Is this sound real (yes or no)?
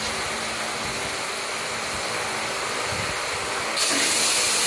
yes